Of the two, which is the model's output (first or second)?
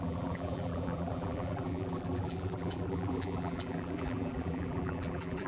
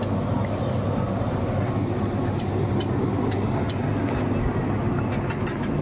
first